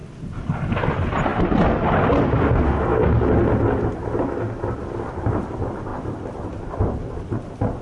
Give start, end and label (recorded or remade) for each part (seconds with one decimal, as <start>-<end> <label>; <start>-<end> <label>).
0.0-5.9 recorded; 5.9-7.8 remade